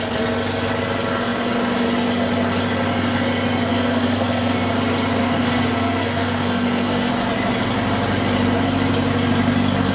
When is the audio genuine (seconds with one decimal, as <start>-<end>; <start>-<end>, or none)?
0.0-3.7; 4.7-5.2; 7.1-9.9